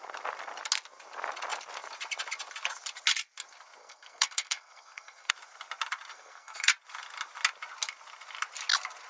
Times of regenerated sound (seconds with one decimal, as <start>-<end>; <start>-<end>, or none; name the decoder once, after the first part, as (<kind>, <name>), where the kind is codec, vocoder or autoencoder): 3.8-5.3 (codec, SNAC); 6.1-6.7